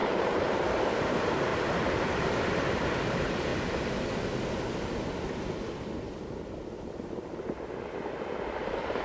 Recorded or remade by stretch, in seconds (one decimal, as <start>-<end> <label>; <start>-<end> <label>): 0.0-1.5 remade; 1.5-2.1 recorded; 2.1-3.5 remade; 3.5-8.6 recorded; 8.6-9.0 remade